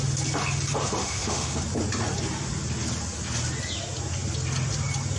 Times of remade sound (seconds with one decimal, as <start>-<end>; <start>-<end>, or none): 1.0-1.6

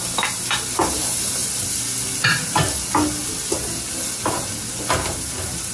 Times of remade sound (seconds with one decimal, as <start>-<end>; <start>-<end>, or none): none

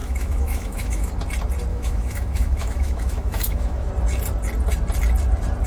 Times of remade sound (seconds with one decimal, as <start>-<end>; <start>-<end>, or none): 0.0-1.1; 1.7-3.9

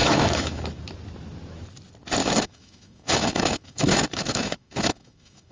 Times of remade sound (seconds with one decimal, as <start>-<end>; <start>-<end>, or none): 0.0-0.6; 2.2-5.5

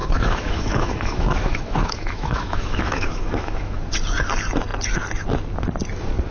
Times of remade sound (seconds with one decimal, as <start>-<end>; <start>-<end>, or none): 0.0-3.8

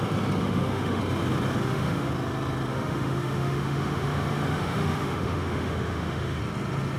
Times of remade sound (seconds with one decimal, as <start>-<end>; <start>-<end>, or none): 0.4-1.0; 1.6-2.1; 2.7-6.4

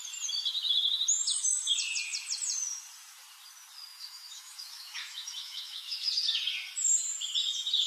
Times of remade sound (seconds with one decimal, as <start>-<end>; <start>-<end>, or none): 3.9-6.1

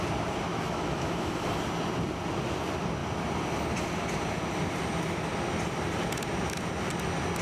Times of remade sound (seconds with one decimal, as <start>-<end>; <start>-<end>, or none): 0.5-1.6